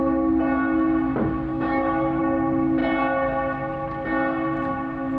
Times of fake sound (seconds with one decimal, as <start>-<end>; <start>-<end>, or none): 1.5-2.2